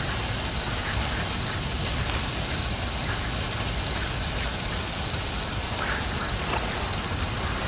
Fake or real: real